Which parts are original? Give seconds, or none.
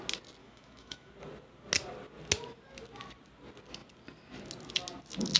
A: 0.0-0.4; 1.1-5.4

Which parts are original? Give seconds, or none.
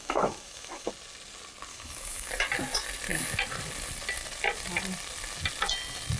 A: 0.9-1.7; 2.3-6.2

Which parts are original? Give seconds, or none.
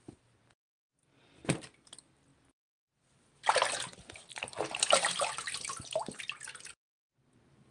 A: 0.0-7.7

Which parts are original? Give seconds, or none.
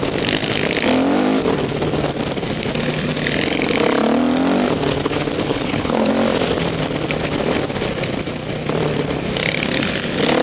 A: 0.0-5.5; 6.1-10.4